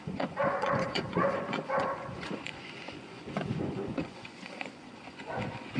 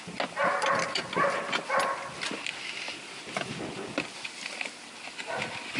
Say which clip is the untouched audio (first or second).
second